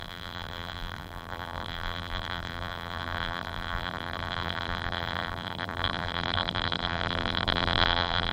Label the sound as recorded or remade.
remade